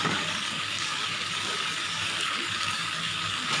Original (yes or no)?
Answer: no